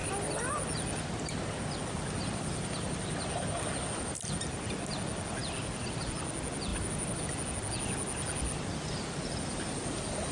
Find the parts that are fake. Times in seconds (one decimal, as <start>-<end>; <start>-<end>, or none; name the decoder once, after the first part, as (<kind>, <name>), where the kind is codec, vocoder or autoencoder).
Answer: 0.0-0.5 (vocoder, BigVGAN v2); 6.7-7.2